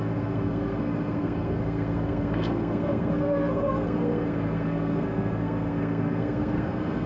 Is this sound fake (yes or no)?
yes